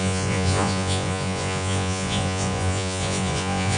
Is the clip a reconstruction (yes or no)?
yes